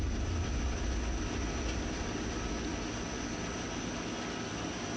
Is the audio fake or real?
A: real